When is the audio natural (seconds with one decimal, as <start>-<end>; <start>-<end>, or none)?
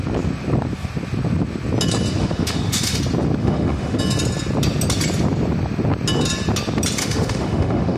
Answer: 0.0-2.2; 3.0-3.4; 4.0-7.0